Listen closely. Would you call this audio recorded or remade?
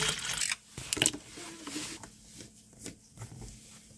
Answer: remade